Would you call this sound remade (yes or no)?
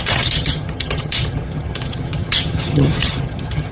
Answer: yes